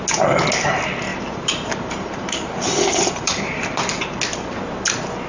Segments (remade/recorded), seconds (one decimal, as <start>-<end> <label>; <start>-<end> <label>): 0.0-1.1 recorded; 1.1-4.0 remade; 4.0-5.3 recorded